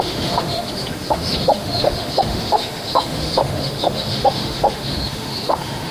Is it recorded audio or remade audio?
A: remade